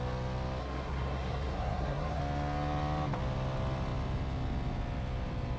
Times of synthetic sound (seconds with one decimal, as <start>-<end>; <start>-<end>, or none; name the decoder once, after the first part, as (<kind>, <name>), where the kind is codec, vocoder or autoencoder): 0.6-2.2 (codec, SNAC)